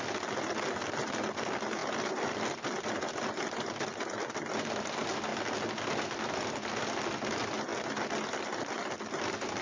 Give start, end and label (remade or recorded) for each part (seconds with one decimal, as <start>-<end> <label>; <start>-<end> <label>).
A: 0.0-5.3 remade; 5.3-6.5 recorded; 6.5-7.7 remade; 7.7-8.3 recorded; 8.3-9.6 remade